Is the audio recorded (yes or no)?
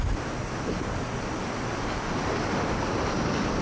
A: yes